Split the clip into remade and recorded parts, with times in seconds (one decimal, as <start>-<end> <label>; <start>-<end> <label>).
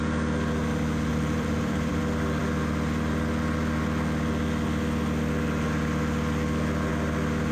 0.0-1.1 recorded; 1.1-2.0 remade; 2.0-7.5 recorded